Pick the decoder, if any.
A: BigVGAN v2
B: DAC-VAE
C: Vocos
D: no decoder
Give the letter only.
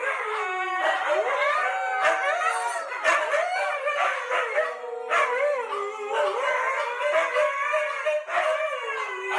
D